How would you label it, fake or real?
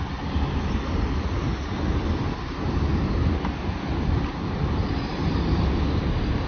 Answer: real